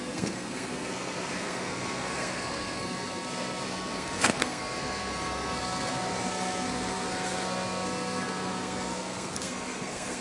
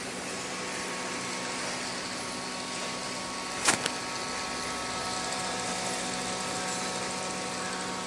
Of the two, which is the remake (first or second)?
first